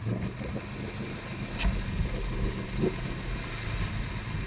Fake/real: real